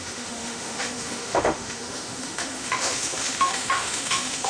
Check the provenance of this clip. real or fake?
fake